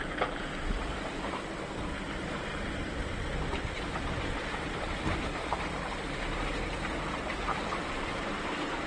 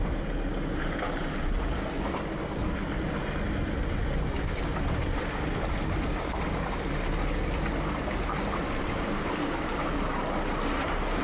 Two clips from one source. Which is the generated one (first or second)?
first